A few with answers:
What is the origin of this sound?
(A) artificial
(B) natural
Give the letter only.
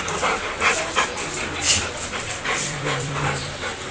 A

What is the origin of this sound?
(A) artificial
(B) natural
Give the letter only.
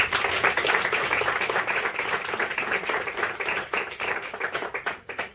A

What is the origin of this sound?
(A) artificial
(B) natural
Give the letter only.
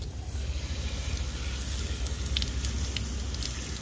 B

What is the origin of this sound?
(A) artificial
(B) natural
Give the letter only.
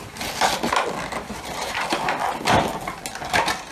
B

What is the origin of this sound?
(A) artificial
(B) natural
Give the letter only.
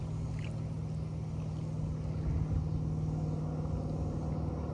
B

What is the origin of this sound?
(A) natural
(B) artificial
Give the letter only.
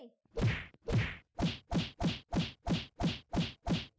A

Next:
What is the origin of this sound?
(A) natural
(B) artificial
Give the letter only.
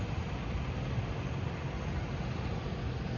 A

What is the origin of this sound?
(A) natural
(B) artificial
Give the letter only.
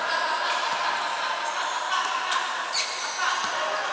A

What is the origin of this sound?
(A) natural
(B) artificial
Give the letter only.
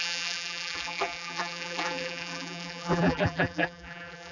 B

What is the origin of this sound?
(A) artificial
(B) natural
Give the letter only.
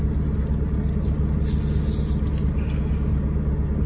B